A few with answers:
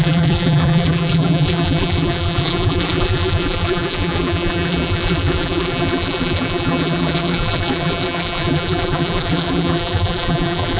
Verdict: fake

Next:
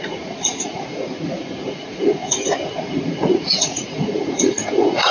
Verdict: fake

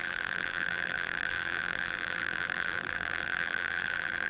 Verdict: fake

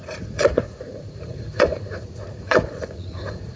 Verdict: fake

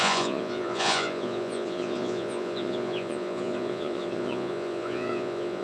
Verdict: fake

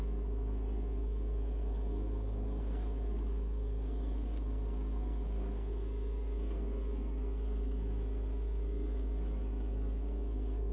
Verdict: fake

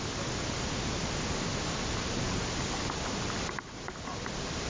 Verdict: real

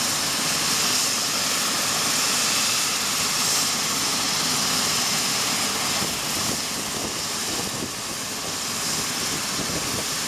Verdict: real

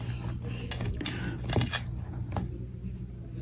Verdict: real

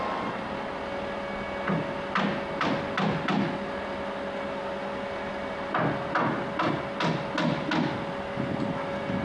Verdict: real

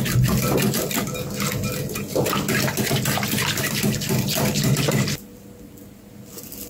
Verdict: real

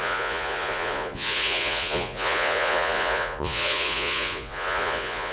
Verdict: fake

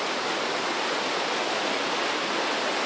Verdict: real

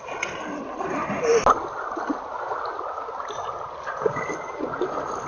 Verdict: real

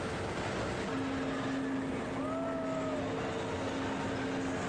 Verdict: real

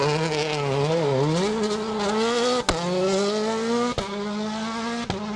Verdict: real